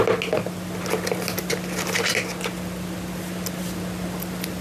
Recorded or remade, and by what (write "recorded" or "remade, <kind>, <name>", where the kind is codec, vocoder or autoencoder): recorded